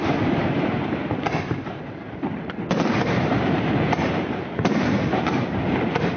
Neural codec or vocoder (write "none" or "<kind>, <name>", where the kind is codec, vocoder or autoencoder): vocoder, BigVGAN v2